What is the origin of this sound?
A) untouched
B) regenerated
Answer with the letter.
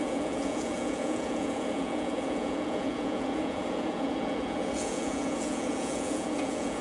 B